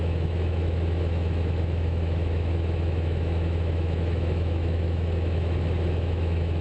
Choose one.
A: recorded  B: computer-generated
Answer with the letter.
B